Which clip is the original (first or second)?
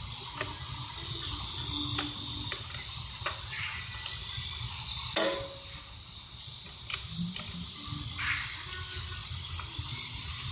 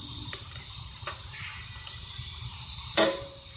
first